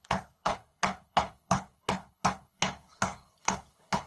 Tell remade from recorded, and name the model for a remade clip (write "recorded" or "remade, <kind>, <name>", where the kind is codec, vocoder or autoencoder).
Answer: remade, codec, HILCodec